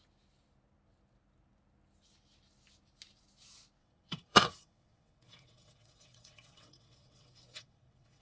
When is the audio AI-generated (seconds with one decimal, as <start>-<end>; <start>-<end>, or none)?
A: 3.8-8.2